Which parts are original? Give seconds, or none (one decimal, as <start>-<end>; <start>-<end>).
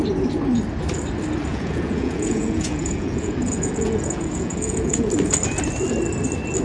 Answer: 0.0-1.5; 5.1-6.6